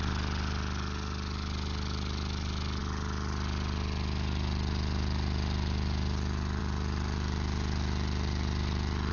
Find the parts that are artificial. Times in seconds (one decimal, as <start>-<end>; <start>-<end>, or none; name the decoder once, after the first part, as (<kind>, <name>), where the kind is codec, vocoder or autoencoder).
none